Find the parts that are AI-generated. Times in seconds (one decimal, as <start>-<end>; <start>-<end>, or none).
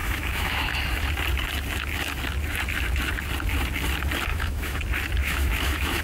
0.0-0.7; 4.3-4.8; 5.2-6.0